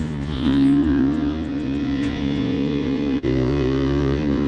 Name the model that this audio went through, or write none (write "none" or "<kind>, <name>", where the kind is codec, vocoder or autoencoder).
vocoder, Vocos